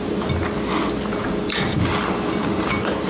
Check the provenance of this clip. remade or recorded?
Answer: recorded